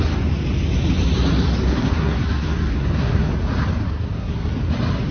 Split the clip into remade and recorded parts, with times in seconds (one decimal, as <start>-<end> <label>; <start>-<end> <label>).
0.0-1.7 recorded; 1.7-3.3 remade; 3.3-3.8 recorded; 3.8-4.5 remade; 4.5-5.1 recorded